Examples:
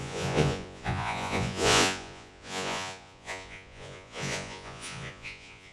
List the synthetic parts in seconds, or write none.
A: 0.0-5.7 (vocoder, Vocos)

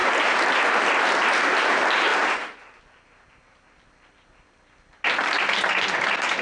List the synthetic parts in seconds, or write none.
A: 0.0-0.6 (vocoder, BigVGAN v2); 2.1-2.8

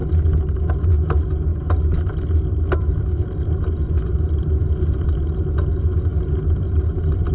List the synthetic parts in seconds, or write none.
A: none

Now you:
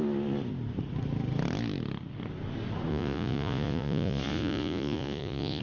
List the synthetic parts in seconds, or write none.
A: 2.9-5.6 (vocoder, Vocos)

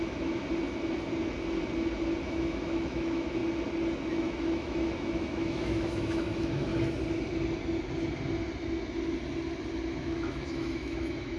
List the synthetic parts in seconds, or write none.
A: 0.0-0.4 (autoencoder, DAC-VAE); 2.2-3.4; 4.1-6.7; 10.0-11.4

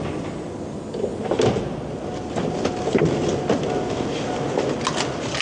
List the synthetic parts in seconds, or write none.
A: none

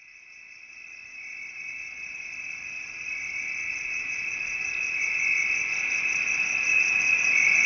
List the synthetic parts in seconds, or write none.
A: none